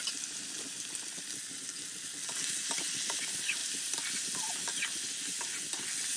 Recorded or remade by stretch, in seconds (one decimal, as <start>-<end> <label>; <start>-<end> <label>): 0.0-6.2 recorded

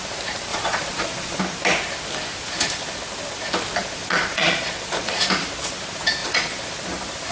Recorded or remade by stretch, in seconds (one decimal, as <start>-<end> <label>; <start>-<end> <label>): 0.0-0.5 recorded; 0.5-1.4 remade; 1.4-3.8 recorded; 3.8-5.2 remade; 5.2-6.2 recorded; 6.2-6.7 remade; 6.7-7.3 recorded

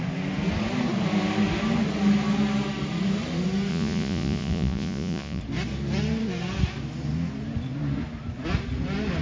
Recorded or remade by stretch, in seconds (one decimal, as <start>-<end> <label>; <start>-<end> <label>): 0.0-3.7 recorded; 3.7-5.4 remade; 5.4-9.2 recorded